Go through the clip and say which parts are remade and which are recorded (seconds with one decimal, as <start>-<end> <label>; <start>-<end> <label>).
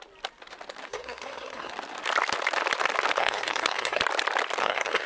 0.0-0.9 recorded; 0.9-1.7 remade; 1.7-3.2 recorded; 3.2-4.0 remade; 4.0-4.6 recorded; 4.6-5.1 remade